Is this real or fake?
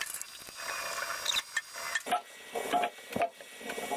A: real